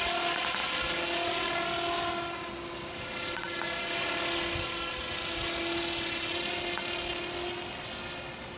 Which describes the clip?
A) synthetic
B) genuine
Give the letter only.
B